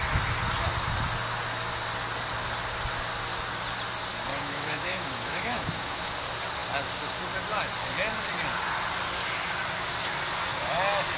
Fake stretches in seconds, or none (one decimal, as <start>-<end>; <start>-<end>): 4.3-6.1